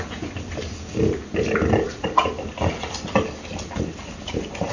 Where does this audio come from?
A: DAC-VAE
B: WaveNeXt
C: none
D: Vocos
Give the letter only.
C